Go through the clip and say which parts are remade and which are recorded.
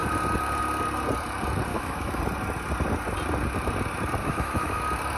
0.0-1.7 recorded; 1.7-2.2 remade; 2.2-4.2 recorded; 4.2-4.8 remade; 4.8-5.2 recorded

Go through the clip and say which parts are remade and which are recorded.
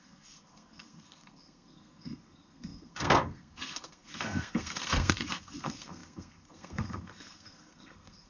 0.0-8.3 remade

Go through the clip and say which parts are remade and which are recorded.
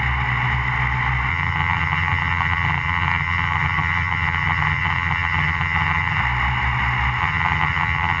0.0-1.3 recorded; 1.3-6.2 remade; 6.2-7.2 recorded; 7.2-8.2 remade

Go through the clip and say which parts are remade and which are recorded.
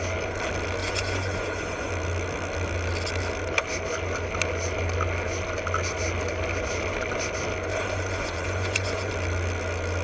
0.0-0.8 recorded; 0.8-1.9 remade; 1.9-7.7 recorded; 7.7-9.1 remade; 9.1-10.0 recorded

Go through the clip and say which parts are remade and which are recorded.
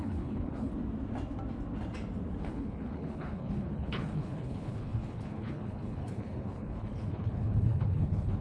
0.0-0.7 remade; 0.7-2.4 recorded; 2.4-8.4 remade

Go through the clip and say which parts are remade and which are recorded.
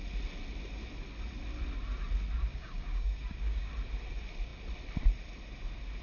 0.0-2.5 recorded; 2.5-3.7 remade; 3.7-6.0 recorded